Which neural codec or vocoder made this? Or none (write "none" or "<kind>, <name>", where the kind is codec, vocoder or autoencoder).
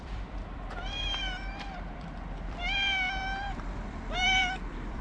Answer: vocoder, BigVGAN v2